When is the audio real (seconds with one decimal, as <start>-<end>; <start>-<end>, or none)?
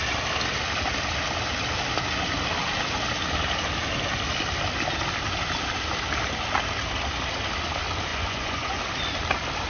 0.0-8.1; 8.8-9.7